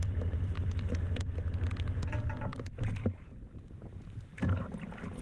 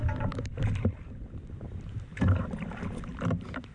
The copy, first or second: second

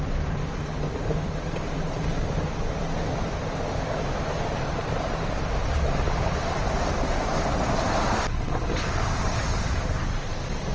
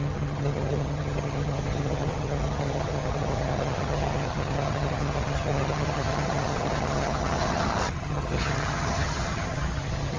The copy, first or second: second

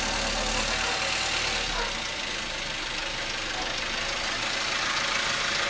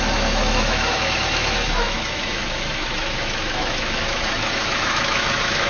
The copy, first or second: second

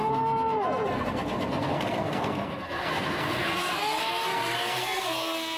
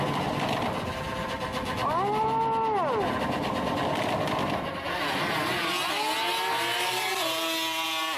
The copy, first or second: first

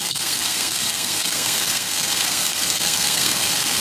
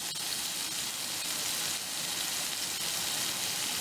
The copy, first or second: first